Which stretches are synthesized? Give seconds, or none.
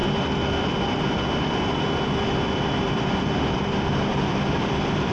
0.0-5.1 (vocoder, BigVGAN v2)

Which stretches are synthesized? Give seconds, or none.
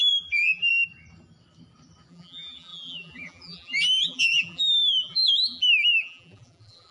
0.0-0.7 (vocoder, BigVGAN v2); 2.1-6.9